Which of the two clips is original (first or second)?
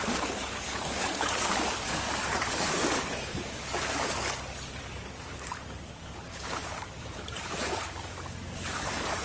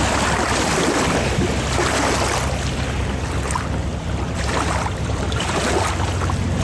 second